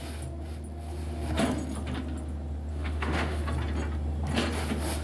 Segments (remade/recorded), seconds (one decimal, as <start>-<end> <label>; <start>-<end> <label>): 0.0-2.7 recorded; 2.7-3.4 remade; 3.4-5.0 recorded